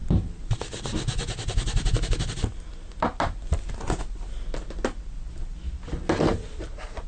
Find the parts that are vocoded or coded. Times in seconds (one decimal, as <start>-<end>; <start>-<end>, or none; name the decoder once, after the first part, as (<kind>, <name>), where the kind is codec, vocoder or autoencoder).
none